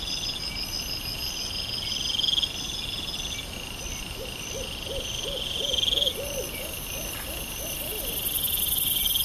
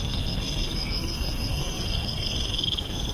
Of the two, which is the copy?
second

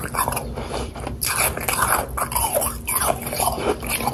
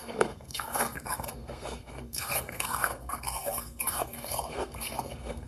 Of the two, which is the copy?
second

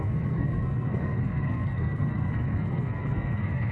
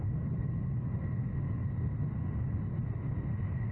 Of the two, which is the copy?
first